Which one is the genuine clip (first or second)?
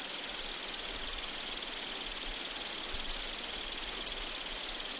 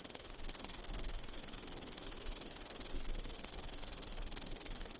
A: first